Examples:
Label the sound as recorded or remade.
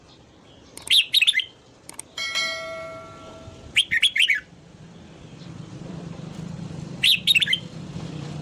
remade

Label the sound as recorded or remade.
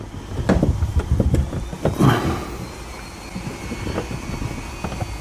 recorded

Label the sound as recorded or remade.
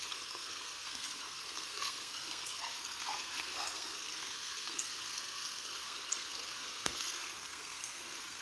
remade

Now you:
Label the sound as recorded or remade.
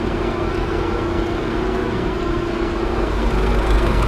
remade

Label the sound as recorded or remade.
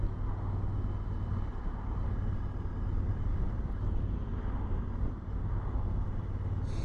recorded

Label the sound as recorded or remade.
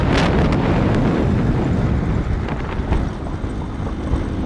recorded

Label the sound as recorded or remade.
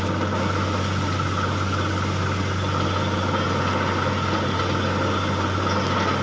recorded